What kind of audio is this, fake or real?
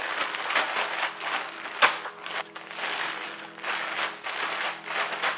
real